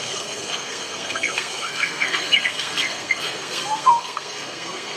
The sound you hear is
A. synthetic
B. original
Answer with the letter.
A